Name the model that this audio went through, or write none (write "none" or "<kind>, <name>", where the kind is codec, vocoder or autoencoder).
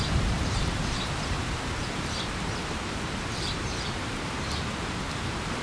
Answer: vocoder, BigVGAN v2